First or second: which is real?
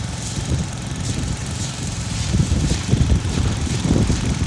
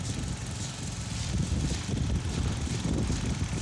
second